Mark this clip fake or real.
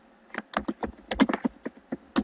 real